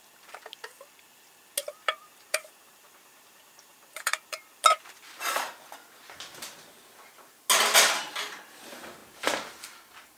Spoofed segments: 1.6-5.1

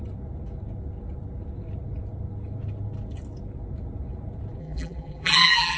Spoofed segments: 4.6-5.8

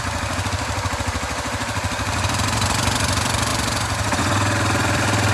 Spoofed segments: 0.0-3.5; 4.2-5.3

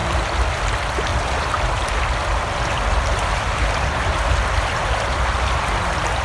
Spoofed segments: 0.0-0.6; 1.1-4.8

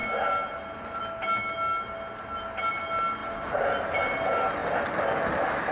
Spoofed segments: 3.2-4.0